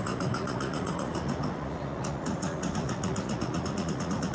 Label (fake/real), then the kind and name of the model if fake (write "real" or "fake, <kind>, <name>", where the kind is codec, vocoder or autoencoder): fake, vocoder, Vocos